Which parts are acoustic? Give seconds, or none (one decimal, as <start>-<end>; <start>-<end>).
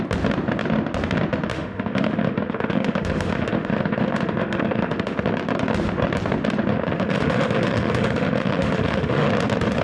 0.0-1.5; 5.3-6.7; 9.3-9.8